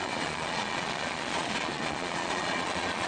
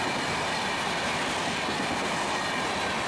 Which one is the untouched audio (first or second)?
second